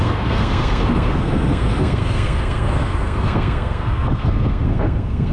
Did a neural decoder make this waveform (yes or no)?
yes